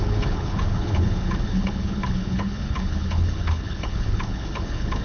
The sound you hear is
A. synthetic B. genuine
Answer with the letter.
A